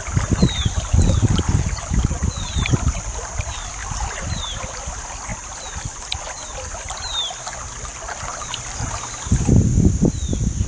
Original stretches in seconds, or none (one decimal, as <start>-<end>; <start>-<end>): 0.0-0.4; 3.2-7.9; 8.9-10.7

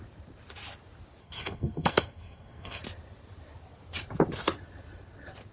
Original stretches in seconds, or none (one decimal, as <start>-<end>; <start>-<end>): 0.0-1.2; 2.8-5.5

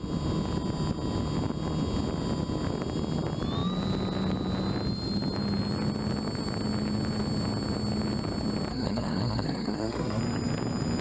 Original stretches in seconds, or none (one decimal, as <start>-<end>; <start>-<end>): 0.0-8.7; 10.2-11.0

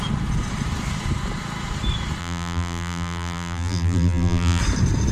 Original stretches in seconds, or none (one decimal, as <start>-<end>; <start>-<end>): 0.0-2.2; 4.6-5.1

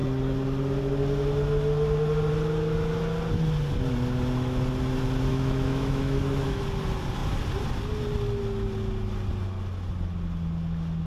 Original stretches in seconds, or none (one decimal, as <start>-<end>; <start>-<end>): 0.0-5.3; 6.6-11.1

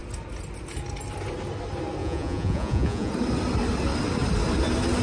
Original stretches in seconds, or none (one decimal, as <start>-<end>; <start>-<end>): 0.0-2.0; 3.1-5.0

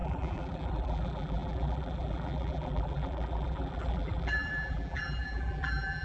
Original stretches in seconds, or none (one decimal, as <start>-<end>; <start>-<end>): none